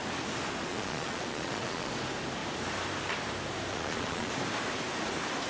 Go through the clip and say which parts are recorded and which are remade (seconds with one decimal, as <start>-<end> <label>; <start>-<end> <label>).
0.0-0.7 recorded; 0.7-1.9 remade; 1.9-3.7 recorded; 3.7-4.3 remade; 4.3-5.5 recorded